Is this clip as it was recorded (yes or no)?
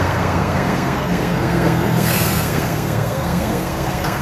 no